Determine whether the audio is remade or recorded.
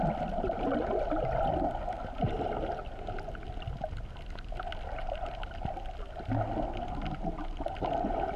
recorded